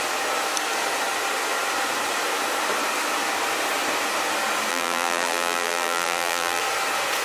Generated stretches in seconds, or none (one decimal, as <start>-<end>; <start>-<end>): 4.7-6.6